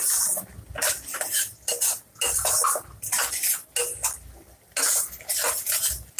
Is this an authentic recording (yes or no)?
yes